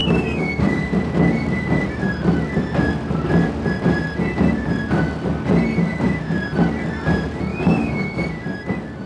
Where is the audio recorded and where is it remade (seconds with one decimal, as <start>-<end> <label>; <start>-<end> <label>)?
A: 0.0-0.8 remade; 0.8-7.5 recorded; 7.5-8.2 remade; 8.2-9.1 recorded